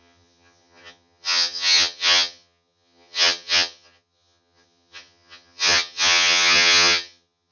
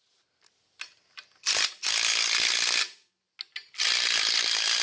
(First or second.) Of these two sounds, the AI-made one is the first